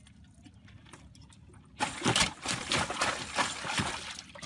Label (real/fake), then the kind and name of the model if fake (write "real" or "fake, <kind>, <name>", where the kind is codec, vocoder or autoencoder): real